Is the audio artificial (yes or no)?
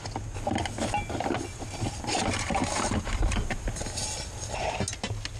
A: no